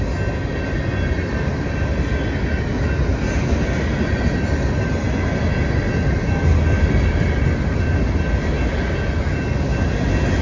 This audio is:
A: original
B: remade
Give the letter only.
A